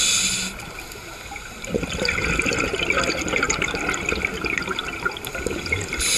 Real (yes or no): yes